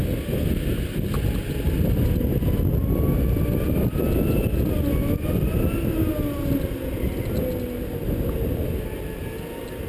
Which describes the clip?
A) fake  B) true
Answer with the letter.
B